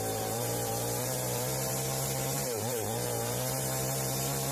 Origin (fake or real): fake